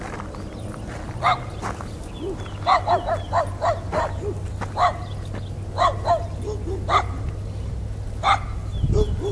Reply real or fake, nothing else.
real